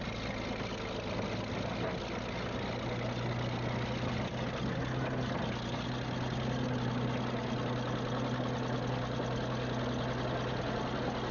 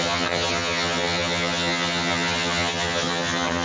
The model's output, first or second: second